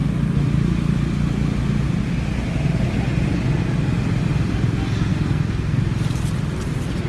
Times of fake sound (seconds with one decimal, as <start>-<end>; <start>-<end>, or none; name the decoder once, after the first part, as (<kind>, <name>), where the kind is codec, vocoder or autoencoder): 5.1-5.8 (codec, SNAC)

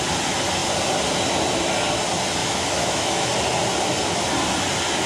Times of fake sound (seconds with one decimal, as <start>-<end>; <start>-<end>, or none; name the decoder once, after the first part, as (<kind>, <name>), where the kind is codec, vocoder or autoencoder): 2.4-3.3 (autoencoder, DAC-VAE)

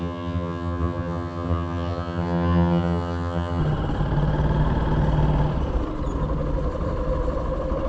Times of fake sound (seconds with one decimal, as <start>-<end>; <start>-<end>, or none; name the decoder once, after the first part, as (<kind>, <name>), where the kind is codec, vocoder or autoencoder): 0.0-3.6 (vocoder, HiFi-GAN)

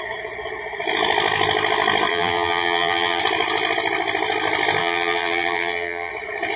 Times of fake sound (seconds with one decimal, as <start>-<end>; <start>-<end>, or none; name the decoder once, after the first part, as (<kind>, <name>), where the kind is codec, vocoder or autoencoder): 2.1-3.2 (vocoder, BigVGAN v2); 4.8-6.1

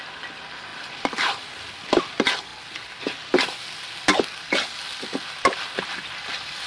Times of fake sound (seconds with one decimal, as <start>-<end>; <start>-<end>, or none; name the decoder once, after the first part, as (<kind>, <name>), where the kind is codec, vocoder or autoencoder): none